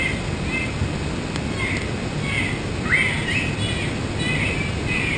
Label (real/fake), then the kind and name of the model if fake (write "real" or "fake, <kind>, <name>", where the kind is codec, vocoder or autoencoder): real